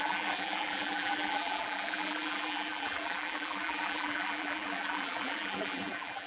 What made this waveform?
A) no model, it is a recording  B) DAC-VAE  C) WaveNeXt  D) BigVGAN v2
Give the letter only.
D